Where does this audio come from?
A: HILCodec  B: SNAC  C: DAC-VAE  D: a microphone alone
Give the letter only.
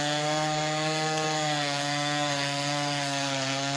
B